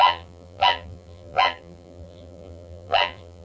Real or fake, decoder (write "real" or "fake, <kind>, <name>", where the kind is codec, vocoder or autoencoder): fake, vocoder, BigVGAN v2